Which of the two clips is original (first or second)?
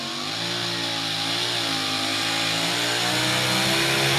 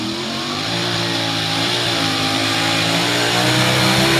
first